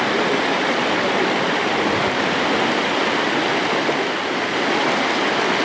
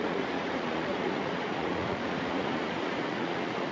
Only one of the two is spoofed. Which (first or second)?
second